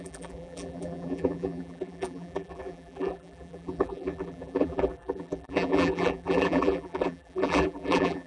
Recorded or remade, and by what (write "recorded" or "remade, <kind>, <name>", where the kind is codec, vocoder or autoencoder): remade, vocoder, BigVGAN v2